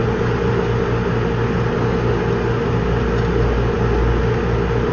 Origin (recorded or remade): recorded